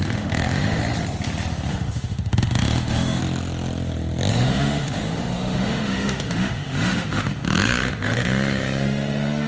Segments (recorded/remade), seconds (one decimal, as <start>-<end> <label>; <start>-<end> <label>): 0.0-0.8 remade; 0.8-1.7 recorded; 1.7-3.2 remade; 3.2-4.3 recorded; 4.3-9.5 remade